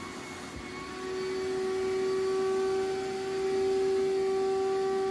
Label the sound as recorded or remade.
recorded